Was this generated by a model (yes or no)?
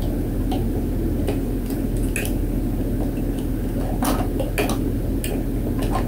no